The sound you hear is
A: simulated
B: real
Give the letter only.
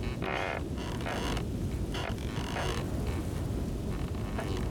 B